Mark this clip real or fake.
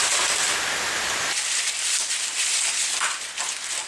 real